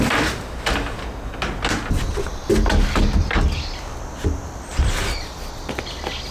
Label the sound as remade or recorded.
recorded